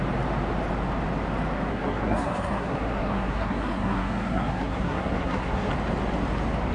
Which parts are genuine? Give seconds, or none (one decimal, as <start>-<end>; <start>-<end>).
0.0-1.7; 5.7-6.7